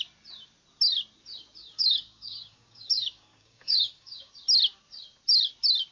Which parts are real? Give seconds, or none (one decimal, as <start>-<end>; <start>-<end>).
0.0-1.6; 4.3-5.9

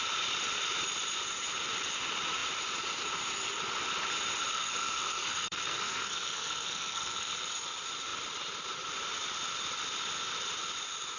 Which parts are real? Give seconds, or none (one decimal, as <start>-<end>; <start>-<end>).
0.0-4.5; 7.5-11.2

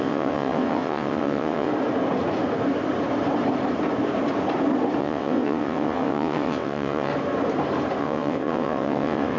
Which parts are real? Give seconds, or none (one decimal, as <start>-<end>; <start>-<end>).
1.7-5.0; 7.1-8.0

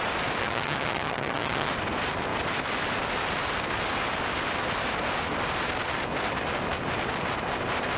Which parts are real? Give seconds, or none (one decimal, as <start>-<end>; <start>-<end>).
0.0-0.4; 1.7-8.0

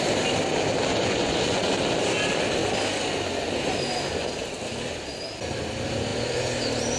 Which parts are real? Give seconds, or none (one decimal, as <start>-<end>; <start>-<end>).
0.0-0.9; 1.8-7.0

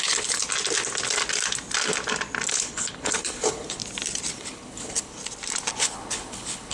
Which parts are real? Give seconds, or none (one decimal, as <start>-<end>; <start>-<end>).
0.4-2.5; 3.8-4.3; 5.2-5.7